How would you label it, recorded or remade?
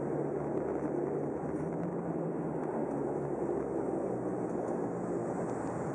recorded